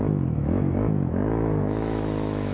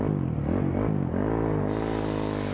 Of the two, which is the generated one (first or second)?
first